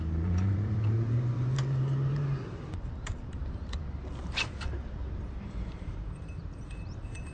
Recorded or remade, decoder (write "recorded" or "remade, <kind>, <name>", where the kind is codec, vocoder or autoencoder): remade, vocoder, BigVGAN v2